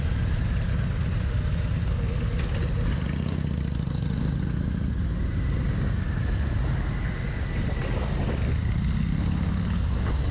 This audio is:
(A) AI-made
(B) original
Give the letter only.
B